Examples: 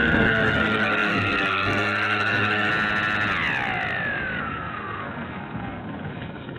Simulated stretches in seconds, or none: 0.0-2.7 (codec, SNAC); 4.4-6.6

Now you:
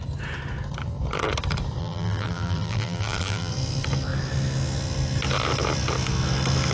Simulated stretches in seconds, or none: 1.8-3.5 (vocoder, BigVGAN v2)

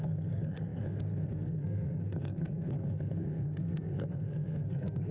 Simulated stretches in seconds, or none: 0.0-5.1 (codec, SNAC)

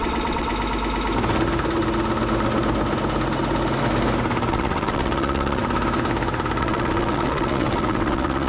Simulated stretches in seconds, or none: 0.0-0.5 (vocoder, WaveNeXt); 4.5-5.6; 6.6-8.5

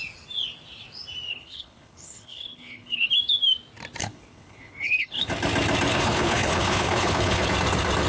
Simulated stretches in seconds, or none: 1.3-3.1 (codec, HILCodec); 4.0-5.3; 5.9-7.5

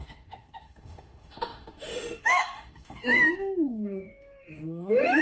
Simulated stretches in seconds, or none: 0.0-5.2 (autoencoder, DAC-VAE)